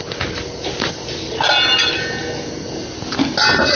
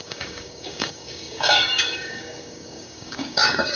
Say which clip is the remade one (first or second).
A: second